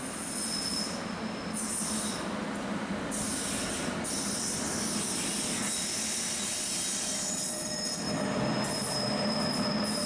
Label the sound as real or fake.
real